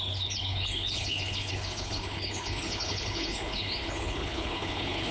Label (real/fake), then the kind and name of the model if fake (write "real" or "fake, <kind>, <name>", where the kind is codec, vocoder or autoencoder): fake, codec, HILCodec